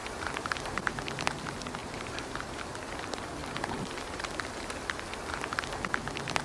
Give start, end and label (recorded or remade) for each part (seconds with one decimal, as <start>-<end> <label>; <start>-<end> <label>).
0.0-0.9 remade; 0.9-1.8 recorded; 1.8-2.6 remade; 2.6-3.4 recorded; 3.4-4.3 remade; 4.3-6.4 recorded